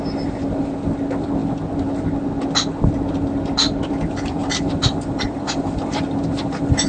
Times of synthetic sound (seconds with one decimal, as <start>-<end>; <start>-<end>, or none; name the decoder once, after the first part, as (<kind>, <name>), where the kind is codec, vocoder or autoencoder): 4.4-6.9 (vocoder, BigVGAN v2)